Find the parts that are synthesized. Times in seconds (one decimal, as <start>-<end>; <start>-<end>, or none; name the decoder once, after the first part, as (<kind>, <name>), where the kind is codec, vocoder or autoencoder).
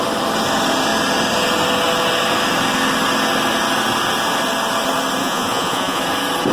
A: 5.2-6.0 (vocoder, Vocos)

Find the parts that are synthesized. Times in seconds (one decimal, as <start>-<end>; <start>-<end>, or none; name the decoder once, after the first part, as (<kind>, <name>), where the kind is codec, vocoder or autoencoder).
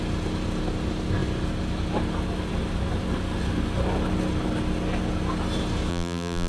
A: 5.9-6.5 (vocoder, BigVGAN v2)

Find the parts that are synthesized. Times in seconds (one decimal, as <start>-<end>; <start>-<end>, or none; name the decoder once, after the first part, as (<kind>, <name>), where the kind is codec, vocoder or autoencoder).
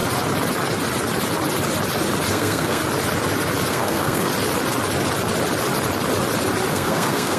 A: 2.3-2.8 (codec, SNAC); 3.7-4.3; 6.7-7.4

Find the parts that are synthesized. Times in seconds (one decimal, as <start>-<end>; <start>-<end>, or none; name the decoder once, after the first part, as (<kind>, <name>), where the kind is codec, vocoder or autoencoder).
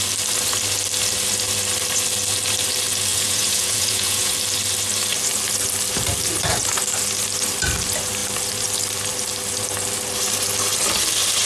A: 3.1-4.3 (vocoder, Vocos)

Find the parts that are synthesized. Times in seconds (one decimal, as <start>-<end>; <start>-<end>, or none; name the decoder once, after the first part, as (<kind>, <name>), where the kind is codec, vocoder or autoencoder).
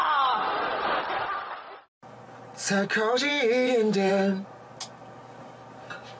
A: 3.3-4.1 (autoencoder, DAC-VAE)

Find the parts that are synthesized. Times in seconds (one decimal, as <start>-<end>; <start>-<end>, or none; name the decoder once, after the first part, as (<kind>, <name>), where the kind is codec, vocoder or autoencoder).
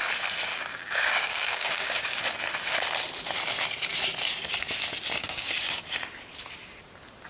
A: 0.5-2.2 (codec, DAC); 5.2-5.8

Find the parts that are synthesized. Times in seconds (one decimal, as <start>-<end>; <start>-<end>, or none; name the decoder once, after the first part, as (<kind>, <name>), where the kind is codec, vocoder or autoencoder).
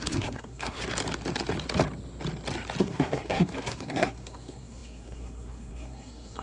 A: 0.0-0.8 (codec, SNAC); 2.8-6.4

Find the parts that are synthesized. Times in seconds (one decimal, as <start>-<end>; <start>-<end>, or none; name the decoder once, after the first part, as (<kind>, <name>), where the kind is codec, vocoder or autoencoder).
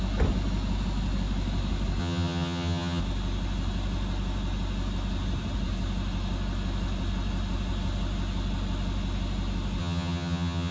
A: 2.0-3.0 (vocoder, HiFi-GAN); 9.8-10.7